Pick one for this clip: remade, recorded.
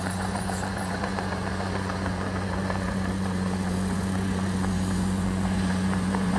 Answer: remade